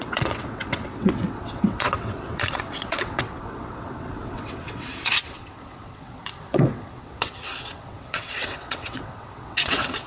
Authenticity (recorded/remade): remade